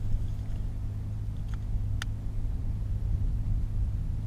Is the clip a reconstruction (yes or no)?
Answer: no